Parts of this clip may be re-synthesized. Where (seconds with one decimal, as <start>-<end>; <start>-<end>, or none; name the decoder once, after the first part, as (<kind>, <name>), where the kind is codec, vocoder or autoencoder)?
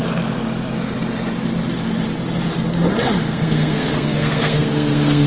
3.2-5.3 (codec, SNAC)